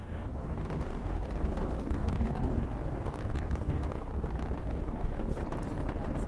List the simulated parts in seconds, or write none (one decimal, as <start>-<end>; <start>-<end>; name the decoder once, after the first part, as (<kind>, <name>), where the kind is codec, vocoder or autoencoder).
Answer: 0.0-4.1 (codec, DAC); 4.6-5.4